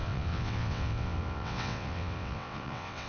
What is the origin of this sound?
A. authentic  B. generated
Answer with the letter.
B